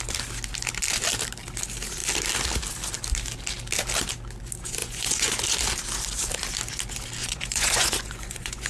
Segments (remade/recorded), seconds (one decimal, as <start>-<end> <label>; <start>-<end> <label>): 0.0-4.8 recorded; 4.8-5.4 remade; 5.4-7.2 recorded; 7.2-8.7 remade